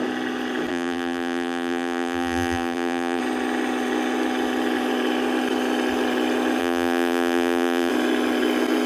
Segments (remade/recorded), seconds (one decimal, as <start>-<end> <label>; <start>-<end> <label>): 0.0-0.7 recorded; 0.7-3.2 remade; 3.2-6.6 recorded; 6.6-7.9 remade; 7.9-8.9 recorded